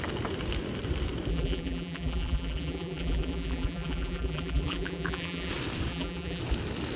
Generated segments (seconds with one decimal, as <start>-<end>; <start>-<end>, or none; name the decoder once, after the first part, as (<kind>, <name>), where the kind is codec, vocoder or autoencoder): 1.3-5.5 (vocoder, BigVGAN v2); 5.9-6.4